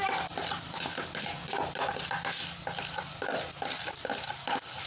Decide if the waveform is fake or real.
real